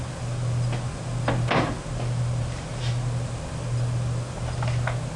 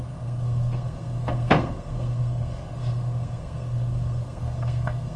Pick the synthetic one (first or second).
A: second